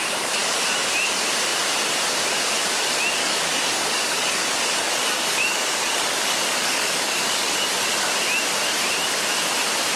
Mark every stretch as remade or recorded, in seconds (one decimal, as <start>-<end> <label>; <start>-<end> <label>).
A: 0.0-3.2 recorded; 3.2-7.7 remade; 7.7-10.0 recorded